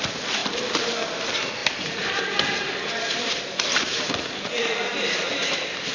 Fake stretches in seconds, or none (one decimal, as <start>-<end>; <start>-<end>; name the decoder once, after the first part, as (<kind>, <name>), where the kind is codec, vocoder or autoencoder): 1.6-5.1 (vocoder, BigVGAN v2)